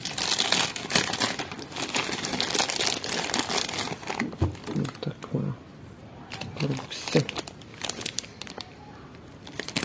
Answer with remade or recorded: recorded